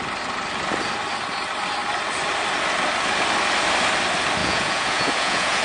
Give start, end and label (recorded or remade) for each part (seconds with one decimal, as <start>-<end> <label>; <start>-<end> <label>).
0.0-4.4 recorded; 4.4-5.6 remade